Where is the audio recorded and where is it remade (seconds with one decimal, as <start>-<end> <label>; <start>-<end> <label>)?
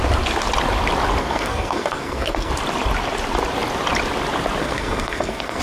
0.0-1.2 recorded; 1.2-2.5 remade; 2.5-4.6 recorded; 4.6-5.6 remade